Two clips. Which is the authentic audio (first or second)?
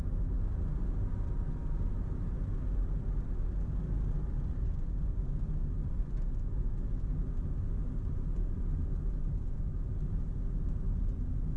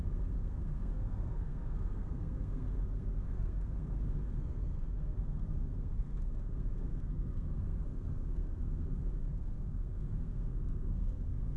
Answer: first